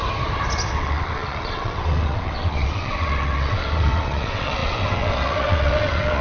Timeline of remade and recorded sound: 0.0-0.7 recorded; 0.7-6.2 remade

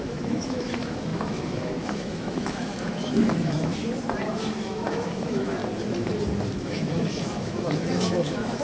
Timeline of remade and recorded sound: 0.0-3.7 remade; 3.7-4.2 recorded; 4.2-5.6 remade; 5.6-6.5 recorded; 6.5-8.6 remade

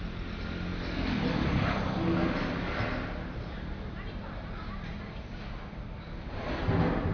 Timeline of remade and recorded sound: 0.0-7.1 recorded

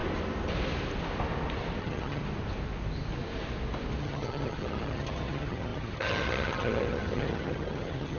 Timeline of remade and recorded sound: 0.0-1.8 recorded; 1.8-2.2 remade; 2.2-4.0 recorded; 4.0-8.2 remade

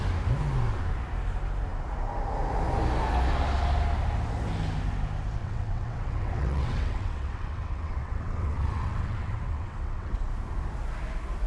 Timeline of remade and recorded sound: 0.0-5.4 recorded; 5.4-10.3 remade; 10.3-11.5 recorded